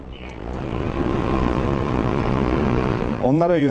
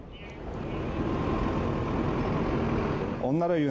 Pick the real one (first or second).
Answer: second